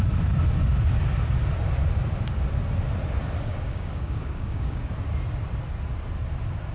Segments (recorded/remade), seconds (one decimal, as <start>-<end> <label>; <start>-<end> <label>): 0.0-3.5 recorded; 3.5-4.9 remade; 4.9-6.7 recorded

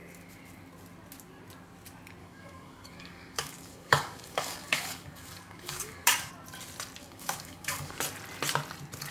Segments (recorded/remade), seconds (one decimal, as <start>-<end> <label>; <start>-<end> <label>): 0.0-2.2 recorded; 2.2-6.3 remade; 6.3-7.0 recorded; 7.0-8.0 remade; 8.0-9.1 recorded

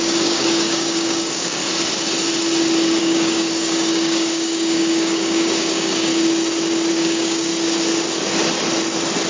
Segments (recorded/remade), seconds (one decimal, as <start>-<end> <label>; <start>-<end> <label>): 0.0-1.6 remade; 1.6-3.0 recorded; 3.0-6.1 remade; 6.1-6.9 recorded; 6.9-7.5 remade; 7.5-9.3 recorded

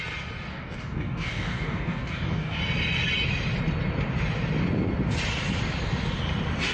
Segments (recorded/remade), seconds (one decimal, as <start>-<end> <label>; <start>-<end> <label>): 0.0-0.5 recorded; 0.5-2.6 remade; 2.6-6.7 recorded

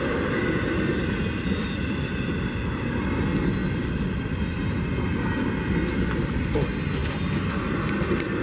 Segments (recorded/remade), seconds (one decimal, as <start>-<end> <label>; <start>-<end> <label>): 0.0-8.4 recorded

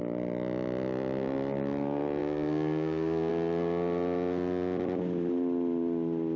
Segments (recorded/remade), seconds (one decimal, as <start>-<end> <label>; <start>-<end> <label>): 0.0-2.2 recorded; 2.2-3.3 remade; 3.3-6.4 recorded

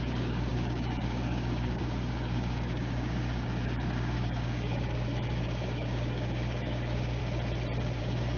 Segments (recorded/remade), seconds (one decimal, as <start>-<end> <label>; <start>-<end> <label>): 0.0-7.2 remade; 7.2-8.0 recorded; 8.0-8.4 remade